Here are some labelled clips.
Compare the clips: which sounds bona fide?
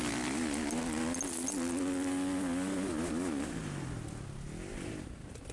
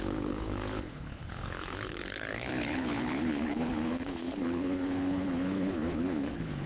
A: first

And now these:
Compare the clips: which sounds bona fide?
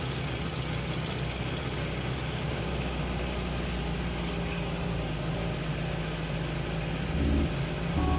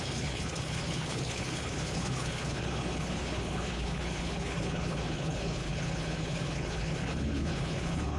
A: first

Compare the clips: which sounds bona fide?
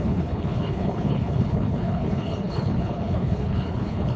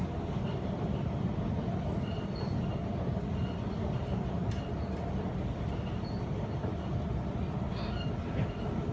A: second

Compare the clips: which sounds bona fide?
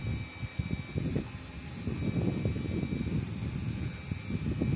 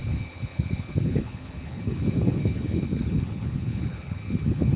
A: first